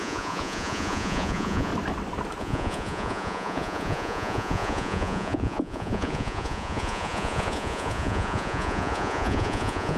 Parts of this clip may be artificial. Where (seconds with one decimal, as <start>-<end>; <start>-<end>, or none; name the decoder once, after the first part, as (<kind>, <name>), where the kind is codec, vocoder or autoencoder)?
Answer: 0.0-1.7 (vocoder, Vocos); 2.4-10.0